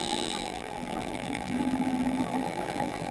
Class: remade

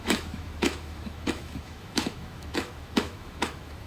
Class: remade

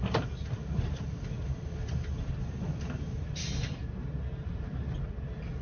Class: recorded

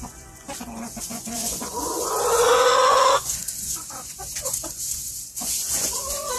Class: remade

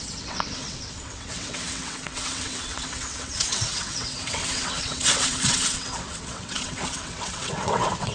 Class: remade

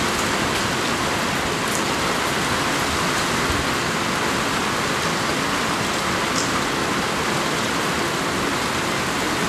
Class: recorded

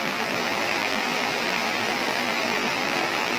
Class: remade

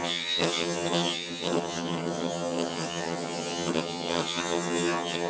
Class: remade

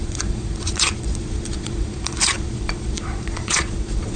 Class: remade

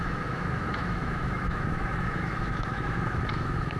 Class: remade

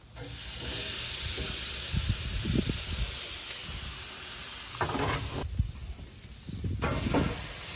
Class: recorded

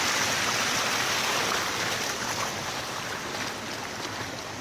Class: recorded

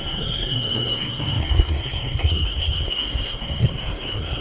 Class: remade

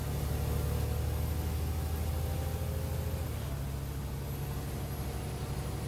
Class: recorded